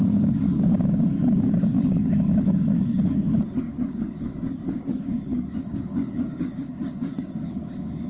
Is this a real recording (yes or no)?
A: no